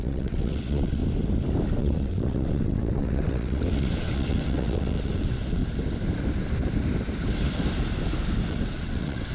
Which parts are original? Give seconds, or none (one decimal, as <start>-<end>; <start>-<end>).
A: 1.0-1.8; 5.6-8.5